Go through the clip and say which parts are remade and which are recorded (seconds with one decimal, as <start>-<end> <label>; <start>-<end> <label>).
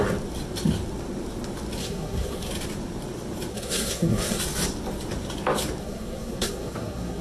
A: 0.0-1.8 recorded; 1.8-2.5 remade; 2.5-3.5 recorded; 3.5-4.4 remade; 4.4-5.8 recorded; 5.8-7.2 remade